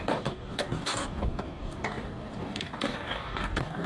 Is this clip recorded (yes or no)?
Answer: no